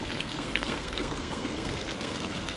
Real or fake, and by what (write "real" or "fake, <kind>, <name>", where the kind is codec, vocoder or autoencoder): fake, codec, SNAC